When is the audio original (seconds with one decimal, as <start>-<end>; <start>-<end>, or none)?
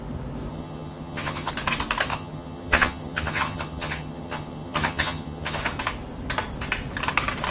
0.0-0.5; 1.5-2.1; 5.6-7.5